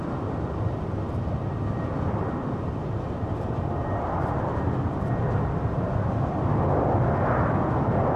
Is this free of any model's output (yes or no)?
yes